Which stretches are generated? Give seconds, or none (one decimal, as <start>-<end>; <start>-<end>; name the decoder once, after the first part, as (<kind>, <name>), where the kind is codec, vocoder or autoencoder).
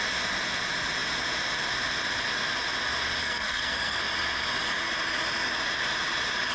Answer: 3.2-4.0 (codec, SNAC)